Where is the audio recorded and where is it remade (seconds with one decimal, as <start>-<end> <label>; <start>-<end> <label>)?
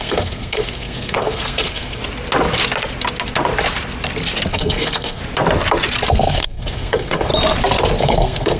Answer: 0.0-2.0 remade; 2.0-4.5 recorded; 4.5-5.2 remade; 5.2-6.1 recorded; 6.1-7.3 remade; 7.3-8.0 recorded; 8.0-8.6 remade